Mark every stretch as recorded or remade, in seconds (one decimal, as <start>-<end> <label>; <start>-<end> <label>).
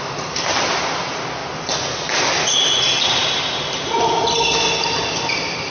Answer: 0.0-5.7 recorded